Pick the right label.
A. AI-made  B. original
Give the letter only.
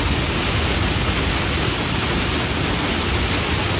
B